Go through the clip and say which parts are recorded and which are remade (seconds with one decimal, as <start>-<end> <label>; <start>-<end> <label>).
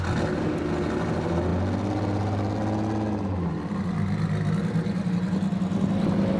0.0-6.4 recorded